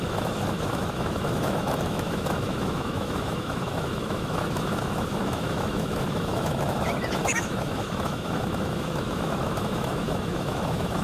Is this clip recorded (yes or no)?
no